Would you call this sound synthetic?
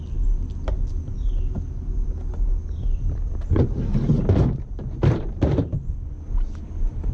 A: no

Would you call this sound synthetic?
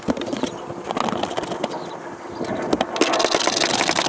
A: no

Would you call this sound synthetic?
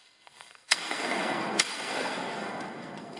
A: yes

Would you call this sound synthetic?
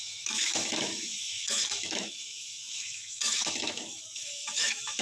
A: yes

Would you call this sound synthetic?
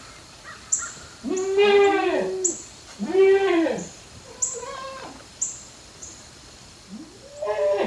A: no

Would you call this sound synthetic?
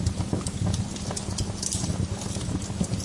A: yes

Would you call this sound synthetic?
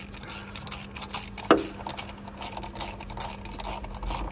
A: no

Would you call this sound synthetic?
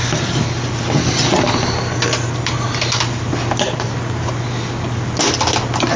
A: no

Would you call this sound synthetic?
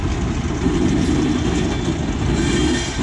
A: no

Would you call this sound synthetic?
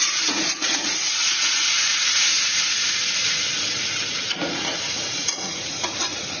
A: yes